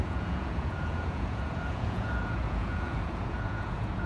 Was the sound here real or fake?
fake